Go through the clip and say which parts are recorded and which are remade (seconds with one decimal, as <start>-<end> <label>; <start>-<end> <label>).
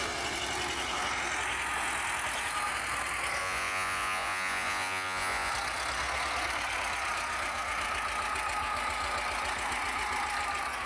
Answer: 0.0-3.4 recorded; 3.4-5.5 remade; 5.5-10.9 recorded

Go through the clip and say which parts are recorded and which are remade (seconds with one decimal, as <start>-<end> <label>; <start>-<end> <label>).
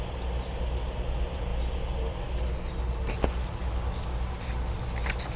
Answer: 0.0-5.4 recorded